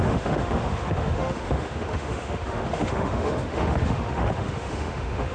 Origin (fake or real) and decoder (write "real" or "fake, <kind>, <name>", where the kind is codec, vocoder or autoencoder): fake, autoencoder, DAC-VAE